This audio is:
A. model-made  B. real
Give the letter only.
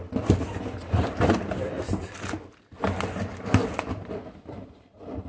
B